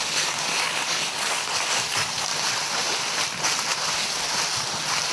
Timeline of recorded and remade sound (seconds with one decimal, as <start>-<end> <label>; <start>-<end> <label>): 0.0-2.3 remade; 2.3-5.1 recorded